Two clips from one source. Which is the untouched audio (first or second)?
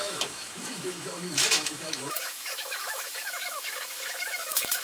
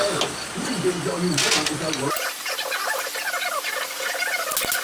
second